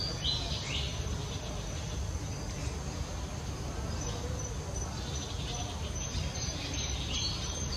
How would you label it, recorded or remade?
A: recorded